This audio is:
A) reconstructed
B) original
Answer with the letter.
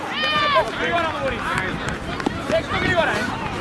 B